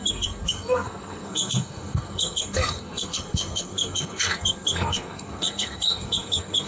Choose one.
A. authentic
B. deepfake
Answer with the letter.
B